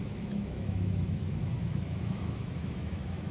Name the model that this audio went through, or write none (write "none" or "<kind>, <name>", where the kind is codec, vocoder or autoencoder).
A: autoencoder, DAC-VAE